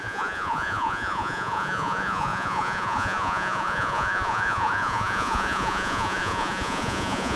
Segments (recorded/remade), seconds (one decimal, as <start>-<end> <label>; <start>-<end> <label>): 0.0-7.4 remade